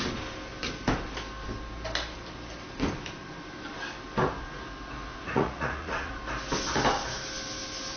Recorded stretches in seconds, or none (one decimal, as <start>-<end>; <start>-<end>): 0.0-5.1; 6.1-8.0